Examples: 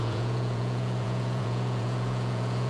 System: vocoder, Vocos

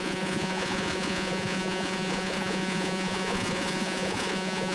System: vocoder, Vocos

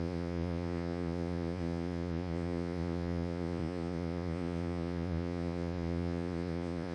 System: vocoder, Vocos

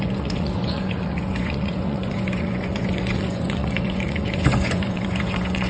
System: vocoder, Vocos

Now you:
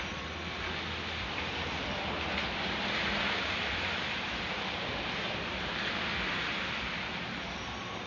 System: none